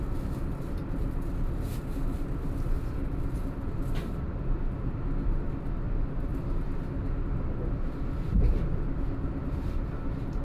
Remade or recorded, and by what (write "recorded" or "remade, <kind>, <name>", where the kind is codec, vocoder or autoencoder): recorded